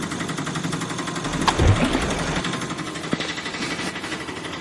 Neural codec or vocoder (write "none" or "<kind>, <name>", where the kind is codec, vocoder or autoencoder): none